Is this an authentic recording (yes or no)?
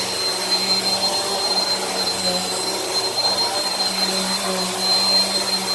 yes